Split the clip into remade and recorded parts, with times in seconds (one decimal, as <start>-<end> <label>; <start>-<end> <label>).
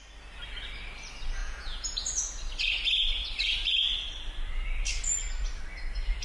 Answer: 0.0-1.4 recorded; 1.4-2.0 remade; 2.0-6.2 recorded